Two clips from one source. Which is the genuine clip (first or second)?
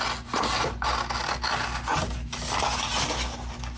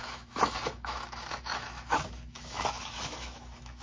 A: first